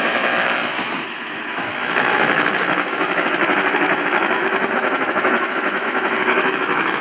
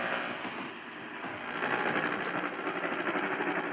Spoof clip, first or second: first